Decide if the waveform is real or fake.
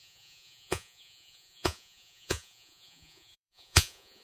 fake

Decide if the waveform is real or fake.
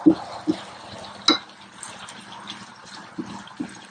real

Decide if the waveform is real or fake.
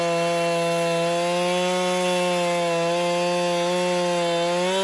real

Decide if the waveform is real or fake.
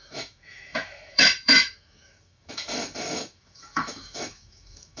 fake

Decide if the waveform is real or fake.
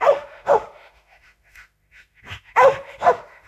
fake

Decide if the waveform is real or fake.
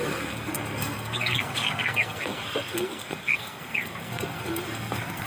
fake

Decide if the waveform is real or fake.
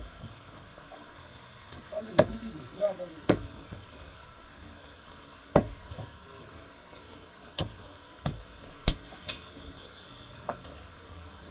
fake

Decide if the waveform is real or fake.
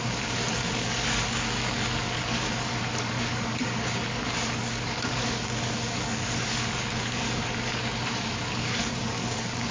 fake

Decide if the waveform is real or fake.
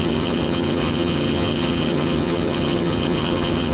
fake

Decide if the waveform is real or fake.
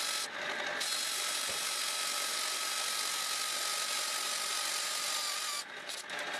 real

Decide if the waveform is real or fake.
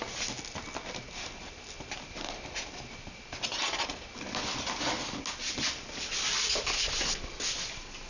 real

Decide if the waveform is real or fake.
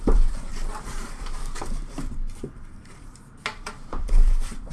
fake